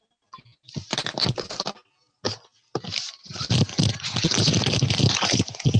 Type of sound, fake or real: real